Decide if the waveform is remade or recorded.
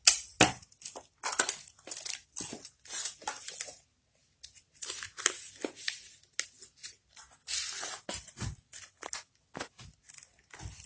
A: recorded